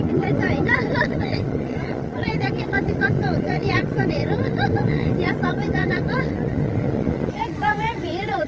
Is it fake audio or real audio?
fake